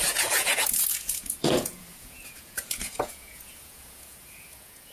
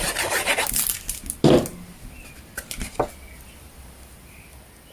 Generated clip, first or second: first